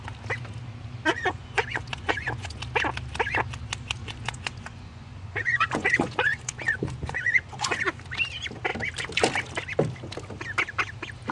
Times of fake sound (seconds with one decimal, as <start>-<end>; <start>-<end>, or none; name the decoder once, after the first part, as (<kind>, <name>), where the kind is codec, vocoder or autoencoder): 1.1-2.6 (vocoder, Vocos); 4.0-7.8